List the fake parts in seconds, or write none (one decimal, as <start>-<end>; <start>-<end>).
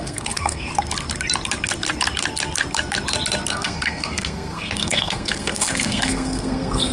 0.0-0.7; 3.5-6.9